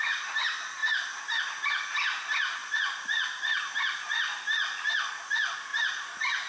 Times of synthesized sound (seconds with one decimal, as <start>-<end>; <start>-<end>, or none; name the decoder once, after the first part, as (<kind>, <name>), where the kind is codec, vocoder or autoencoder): none